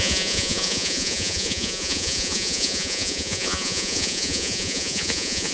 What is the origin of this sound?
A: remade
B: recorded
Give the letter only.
A